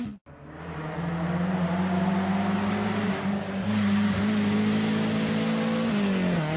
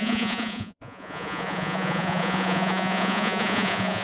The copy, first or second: second